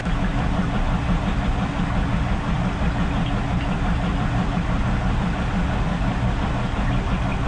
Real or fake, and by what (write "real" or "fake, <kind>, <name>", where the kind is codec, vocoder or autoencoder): real